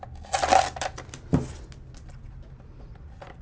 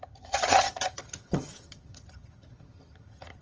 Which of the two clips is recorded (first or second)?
first